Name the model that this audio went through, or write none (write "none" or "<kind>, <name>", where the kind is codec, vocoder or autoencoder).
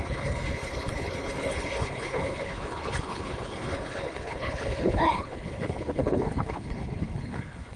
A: codec, HILCodec